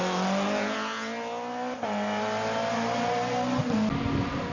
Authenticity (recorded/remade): recorded